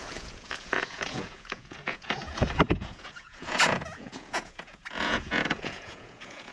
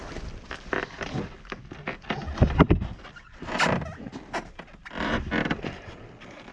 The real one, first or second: second